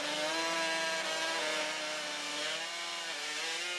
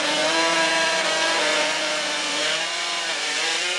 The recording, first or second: first